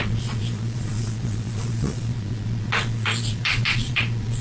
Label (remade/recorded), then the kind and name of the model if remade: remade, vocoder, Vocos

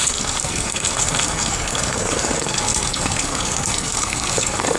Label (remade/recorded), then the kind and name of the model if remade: remade, codec, SNAC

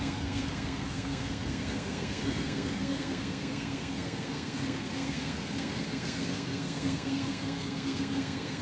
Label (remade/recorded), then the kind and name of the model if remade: remade, codec, SNAC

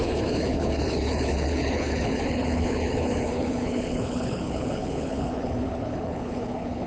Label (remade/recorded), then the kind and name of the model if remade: remade, codec, HILCodec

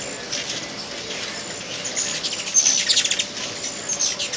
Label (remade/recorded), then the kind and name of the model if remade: recorded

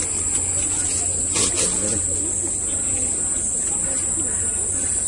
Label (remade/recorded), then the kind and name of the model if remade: recorded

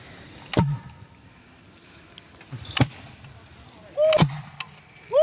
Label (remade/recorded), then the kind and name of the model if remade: recorded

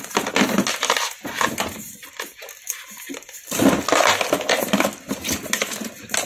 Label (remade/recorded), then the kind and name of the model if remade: recorded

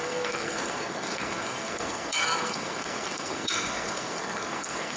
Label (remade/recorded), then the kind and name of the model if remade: remade, codec, SNAC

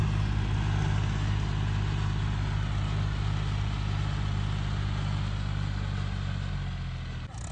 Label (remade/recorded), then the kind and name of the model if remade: recorded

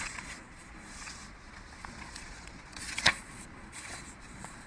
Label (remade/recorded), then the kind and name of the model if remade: remade, vocoder, Vocos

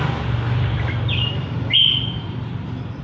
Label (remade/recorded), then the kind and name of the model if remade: remade, vocoder, BigVGAN v2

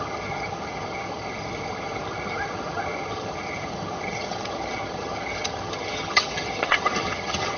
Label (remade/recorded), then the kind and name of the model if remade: remade, vocoder, HiFi-GAN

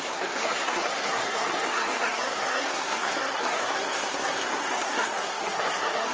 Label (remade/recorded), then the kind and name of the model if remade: remade, codec, SNAC